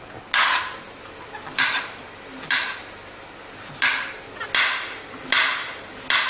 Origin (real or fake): real